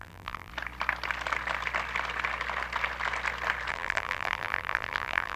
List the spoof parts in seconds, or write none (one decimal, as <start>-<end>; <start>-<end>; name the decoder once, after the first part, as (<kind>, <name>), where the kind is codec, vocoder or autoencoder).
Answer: 0.0-0.5 (vocoder, BigVGAN v2); 3.7-5.4